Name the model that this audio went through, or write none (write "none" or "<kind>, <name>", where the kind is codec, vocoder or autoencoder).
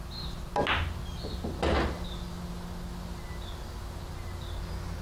none